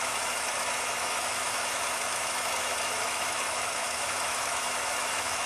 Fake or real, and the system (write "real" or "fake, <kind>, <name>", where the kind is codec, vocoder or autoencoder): fake, autoencoder, DAC-VAE